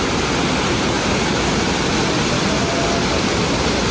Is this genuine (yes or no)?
yes